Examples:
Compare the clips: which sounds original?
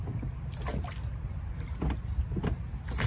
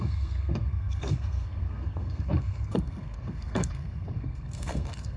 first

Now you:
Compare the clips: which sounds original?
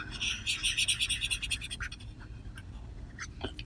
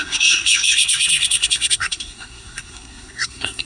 first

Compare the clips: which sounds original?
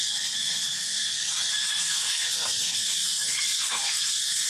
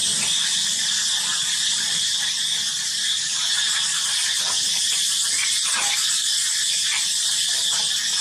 second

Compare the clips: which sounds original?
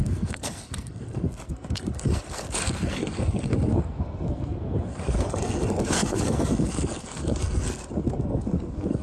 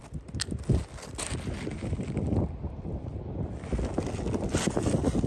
second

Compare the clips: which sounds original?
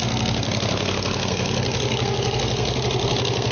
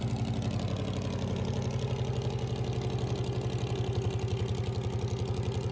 second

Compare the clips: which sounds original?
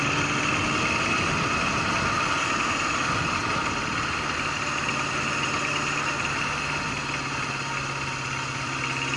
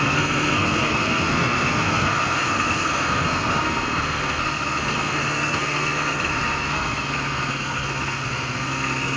first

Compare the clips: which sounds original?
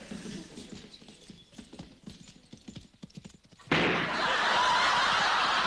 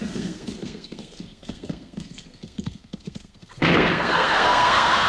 first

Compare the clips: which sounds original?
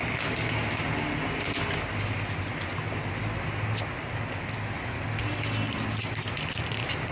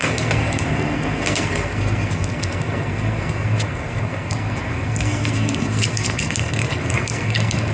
first